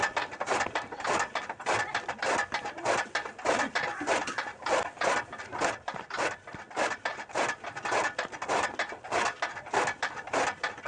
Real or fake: real